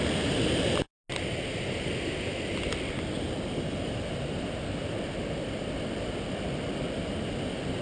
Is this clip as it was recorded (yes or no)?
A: yes